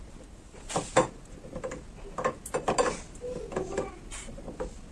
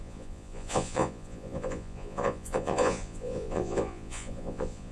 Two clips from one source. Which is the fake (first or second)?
second